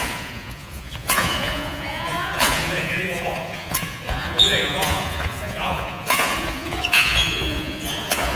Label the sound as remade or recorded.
remade